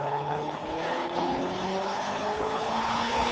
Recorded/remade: remade